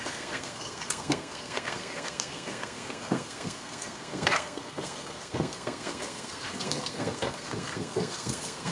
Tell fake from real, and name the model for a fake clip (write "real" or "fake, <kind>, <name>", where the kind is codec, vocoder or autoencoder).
fake, codec, SNAC